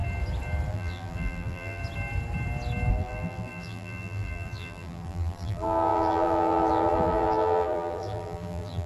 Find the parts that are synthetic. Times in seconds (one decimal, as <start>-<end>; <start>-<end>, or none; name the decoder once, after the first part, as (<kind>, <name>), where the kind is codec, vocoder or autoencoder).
0.7-1.8 (vocoder, BigVGAN v2); 2.9-8.9